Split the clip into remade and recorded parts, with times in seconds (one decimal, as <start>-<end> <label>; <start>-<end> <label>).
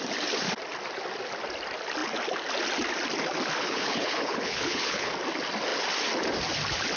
0.0-3.6 recorded; 3.6-5.1 remade; 5.1-7.0 recorded